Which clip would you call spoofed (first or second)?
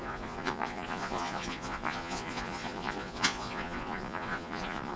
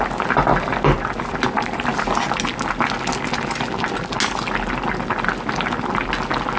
first